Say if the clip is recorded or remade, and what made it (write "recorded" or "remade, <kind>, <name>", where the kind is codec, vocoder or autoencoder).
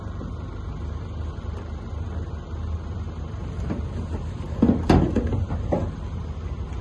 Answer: recorded